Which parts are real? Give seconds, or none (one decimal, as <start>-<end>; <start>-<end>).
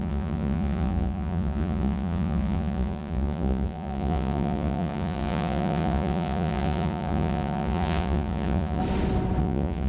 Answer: 8.8-9.4